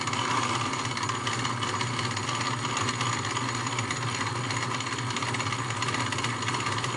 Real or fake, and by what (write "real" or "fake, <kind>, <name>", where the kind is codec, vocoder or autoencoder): real